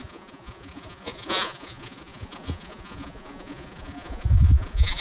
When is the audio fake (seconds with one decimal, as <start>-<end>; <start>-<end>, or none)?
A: 0.0-5.0